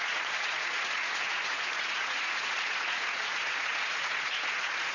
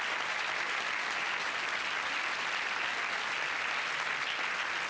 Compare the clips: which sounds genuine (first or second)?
second